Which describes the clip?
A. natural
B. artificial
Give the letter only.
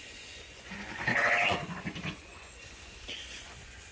B